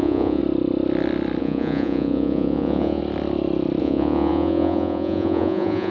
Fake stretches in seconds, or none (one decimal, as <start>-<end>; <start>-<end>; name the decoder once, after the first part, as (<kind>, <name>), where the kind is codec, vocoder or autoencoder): 0.0-0.4 (vocoder, Vocos); 1.4-3.0; 3.8-5.9